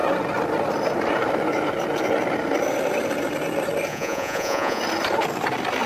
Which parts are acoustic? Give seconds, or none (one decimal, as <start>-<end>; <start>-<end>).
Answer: 0.0-3.9; 4.8-5.9